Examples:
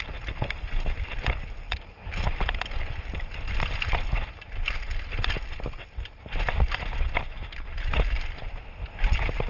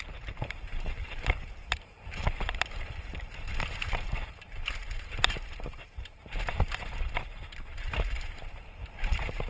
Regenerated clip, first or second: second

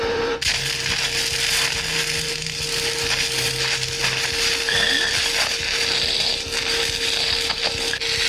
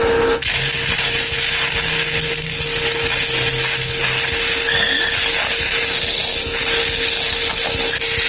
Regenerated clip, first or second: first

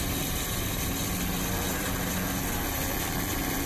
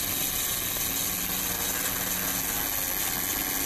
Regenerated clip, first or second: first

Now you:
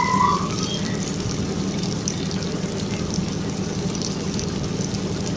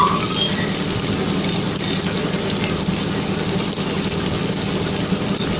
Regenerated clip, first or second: first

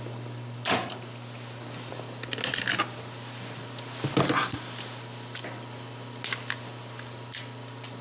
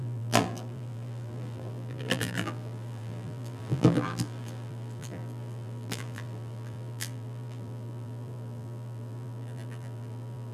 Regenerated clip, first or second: second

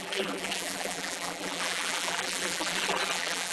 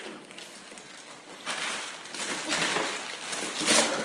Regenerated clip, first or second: first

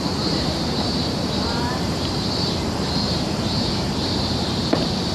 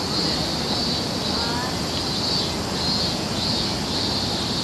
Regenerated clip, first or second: first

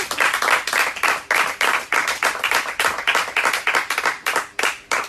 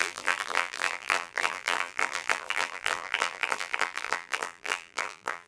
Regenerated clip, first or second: second